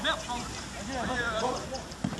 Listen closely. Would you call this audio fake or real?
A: real